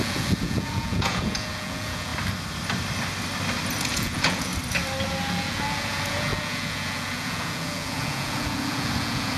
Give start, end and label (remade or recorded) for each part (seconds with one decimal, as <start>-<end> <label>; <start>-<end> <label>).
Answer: 0.0-2.1 remade; 2.1-3.8 recorded; 3.8-4.5 remade; 4.5-5.3 recorded; 5.3-9.4 remade